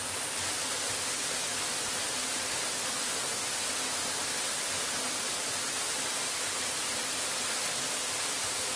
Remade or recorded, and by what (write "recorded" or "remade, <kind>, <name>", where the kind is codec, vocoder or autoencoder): recorded